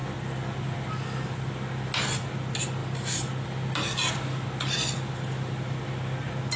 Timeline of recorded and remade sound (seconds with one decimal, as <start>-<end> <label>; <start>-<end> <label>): 0.0-6.6 recorded